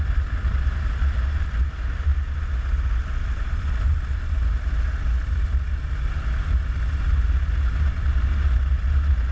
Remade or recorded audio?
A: recorded